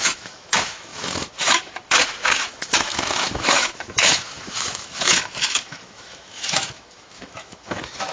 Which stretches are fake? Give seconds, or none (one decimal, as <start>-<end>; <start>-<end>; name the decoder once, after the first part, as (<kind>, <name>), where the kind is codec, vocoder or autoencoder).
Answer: 0.0-8.1 (autoencoder, DAC-VAE)